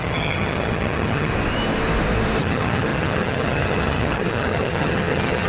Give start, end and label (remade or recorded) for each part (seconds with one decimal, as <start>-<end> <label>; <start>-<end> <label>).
0.0-1.3 remade; 1.3-2.4 recorded; 2.4-5.5 remade